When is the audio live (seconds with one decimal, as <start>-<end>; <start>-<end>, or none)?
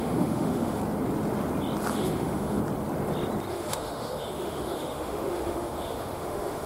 0.8-1.9; 2.6-3.5